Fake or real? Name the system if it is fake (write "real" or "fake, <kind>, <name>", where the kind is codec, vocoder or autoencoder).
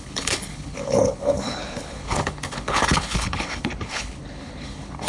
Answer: fake, codec, HILCodec